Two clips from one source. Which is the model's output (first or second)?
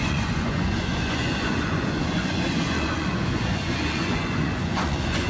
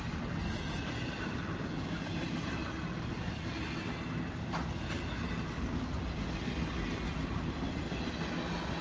first